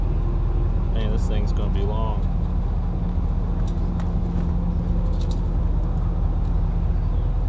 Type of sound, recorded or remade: recorded